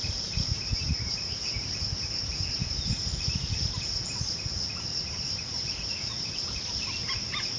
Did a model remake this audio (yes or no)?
yes